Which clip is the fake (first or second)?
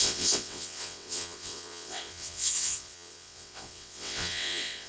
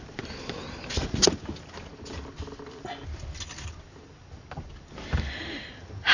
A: first